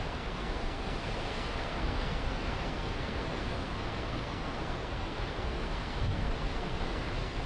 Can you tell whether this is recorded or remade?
remade